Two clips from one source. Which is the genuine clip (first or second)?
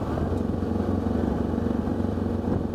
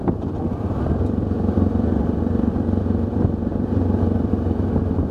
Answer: first